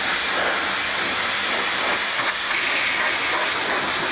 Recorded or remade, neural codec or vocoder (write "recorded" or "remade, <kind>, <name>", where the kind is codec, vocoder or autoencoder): recorded